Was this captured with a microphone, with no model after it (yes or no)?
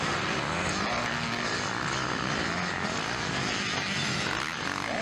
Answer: yes